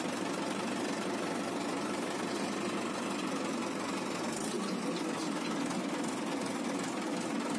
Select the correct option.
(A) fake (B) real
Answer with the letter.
B